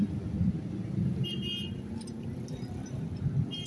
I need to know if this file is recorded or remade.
recorded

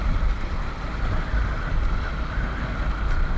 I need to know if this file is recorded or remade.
recorded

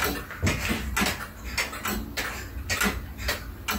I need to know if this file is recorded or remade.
recorded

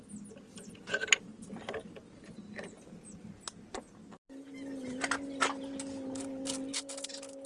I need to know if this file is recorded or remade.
recorded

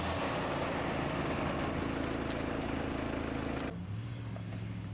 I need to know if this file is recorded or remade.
recorded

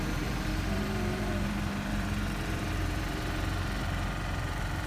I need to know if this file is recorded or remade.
remade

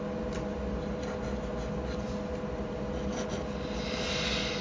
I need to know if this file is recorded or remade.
recorded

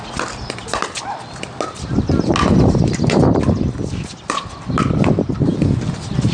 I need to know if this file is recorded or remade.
recorded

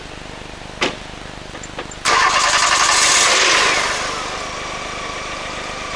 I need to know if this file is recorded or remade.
recorded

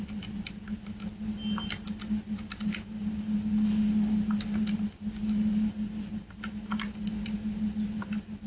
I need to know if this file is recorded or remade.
recorded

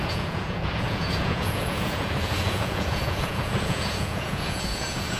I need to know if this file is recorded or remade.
remade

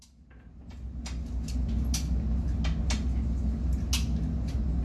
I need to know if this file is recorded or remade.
recorded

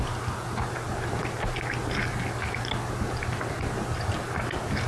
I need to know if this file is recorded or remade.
recorded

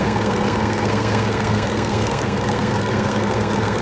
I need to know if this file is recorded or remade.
remade